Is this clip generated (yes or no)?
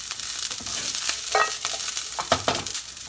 yes